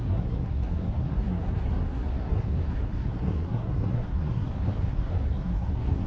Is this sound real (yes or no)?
no